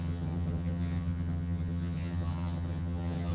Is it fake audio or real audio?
fake